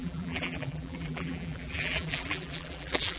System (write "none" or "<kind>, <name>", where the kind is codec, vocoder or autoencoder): vocoder, BigVGAN v2